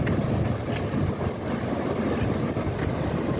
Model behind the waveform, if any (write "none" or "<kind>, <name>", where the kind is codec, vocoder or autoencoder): none